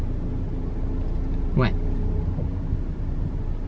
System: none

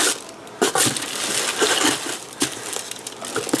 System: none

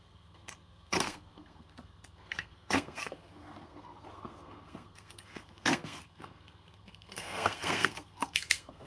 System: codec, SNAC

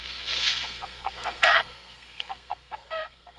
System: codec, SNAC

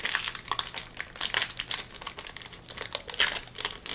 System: none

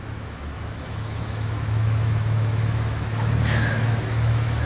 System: autoencoder, DAC-VAE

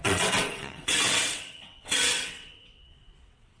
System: vocoder, WaveNeXt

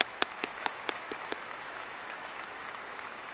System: autoencoder, DAC-VAE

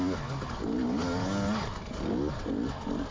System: none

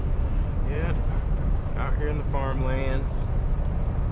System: vocoder, BigVGAN v2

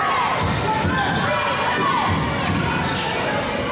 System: none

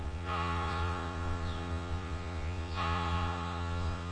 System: vocoder, Vocos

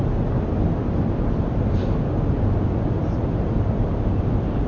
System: none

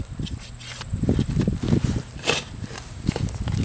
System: none